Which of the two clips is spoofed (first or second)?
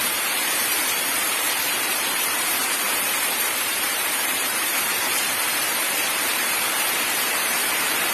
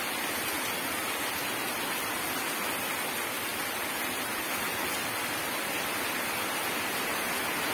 first